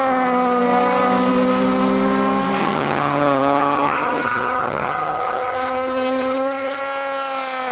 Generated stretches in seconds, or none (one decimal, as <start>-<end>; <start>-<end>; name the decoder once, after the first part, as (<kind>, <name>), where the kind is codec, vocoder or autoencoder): 2.6-6.8 (vocoder, HiFi-GAN)